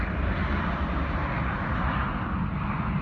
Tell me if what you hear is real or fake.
real